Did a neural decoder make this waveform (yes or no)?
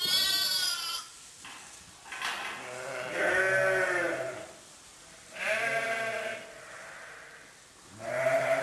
no